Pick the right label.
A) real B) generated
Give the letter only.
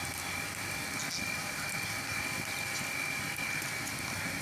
A